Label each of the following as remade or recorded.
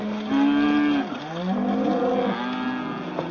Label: recorded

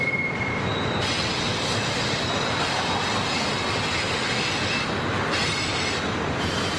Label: recorded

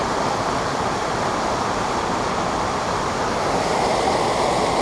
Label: recorded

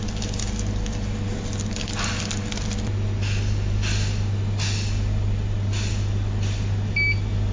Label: recorded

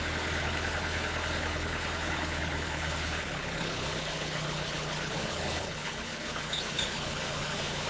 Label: remade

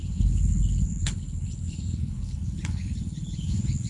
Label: remade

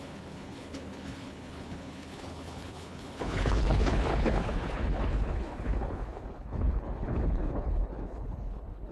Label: remade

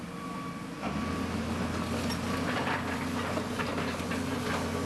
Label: recorded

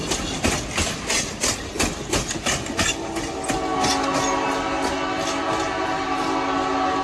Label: recorded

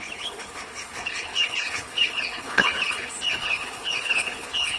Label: remade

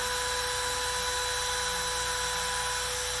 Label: recorded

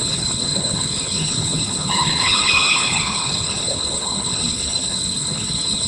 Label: remade